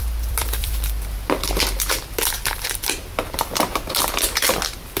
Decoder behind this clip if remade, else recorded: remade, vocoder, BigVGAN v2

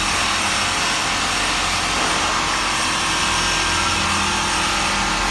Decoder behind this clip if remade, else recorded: recorded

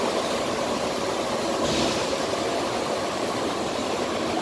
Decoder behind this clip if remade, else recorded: remade, vocoder, BigVGAN v2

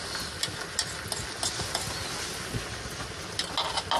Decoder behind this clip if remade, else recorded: recorded